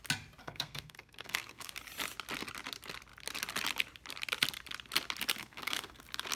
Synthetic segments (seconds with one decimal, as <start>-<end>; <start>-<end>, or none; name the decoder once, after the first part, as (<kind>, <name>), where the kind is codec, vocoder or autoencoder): 0.4-1.7 (codec, SNAC); 5.4-6.0